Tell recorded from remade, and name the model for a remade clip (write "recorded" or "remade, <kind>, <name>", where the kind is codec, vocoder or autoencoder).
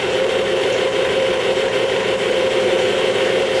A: remade, vocoder, BigVGAN v2